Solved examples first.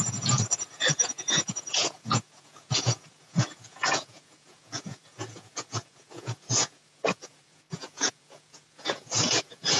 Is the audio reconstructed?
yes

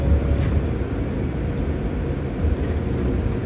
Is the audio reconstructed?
no